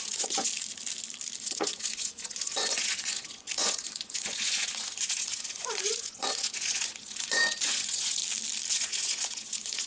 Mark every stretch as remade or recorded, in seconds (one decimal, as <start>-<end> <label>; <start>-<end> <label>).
0.0-0.5 remade; 0.5-1.4 recorded; 1.4-8.2 remade; 8.2-8.7 recorded; 8.7-9.9 remade